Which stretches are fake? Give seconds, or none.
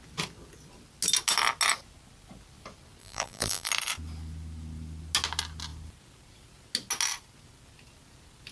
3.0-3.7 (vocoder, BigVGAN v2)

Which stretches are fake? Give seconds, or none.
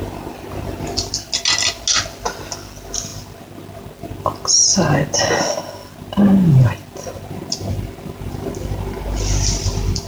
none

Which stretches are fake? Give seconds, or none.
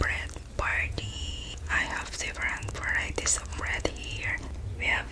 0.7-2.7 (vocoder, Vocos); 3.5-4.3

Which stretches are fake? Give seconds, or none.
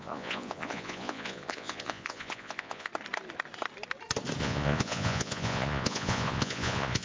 0.0-2.9 (vocoder, Vocos); 4.4-7.0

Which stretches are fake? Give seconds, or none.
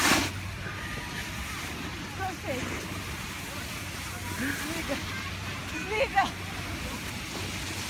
none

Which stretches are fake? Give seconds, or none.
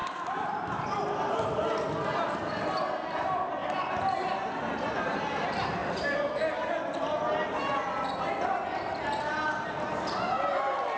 0.0-0.8 (vocoder, BigVGAN v2)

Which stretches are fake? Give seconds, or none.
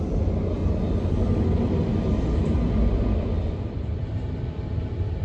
0.0-0.6 (vocoder, BigVGAN v2); 1.3-5.2